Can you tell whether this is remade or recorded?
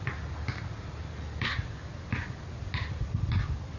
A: recorded